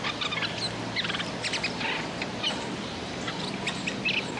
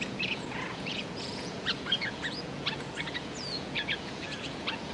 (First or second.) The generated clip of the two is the second